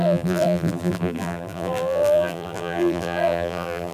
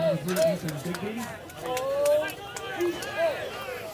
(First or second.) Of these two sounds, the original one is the second